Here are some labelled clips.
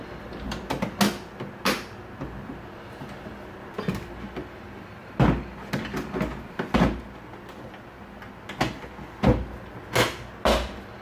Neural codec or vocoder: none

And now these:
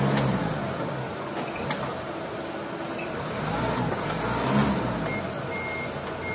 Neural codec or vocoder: none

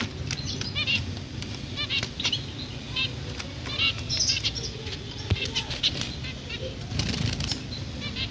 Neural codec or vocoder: none